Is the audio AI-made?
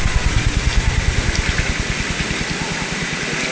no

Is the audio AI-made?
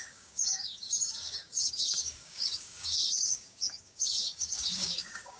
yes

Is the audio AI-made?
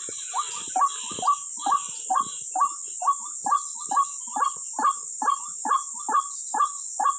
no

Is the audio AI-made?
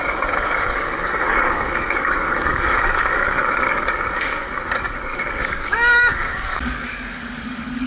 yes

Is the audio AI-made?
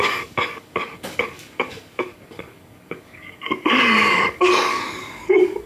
yes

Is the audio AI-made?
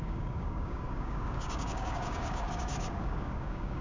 yes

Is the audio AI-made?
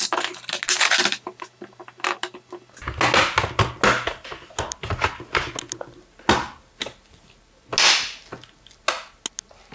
no